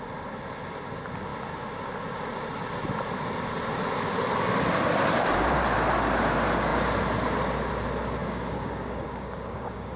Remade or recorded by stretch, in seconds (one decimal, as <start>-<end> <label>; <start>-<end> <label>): 0.0-8.2 recorded; 8.2-10.0 remade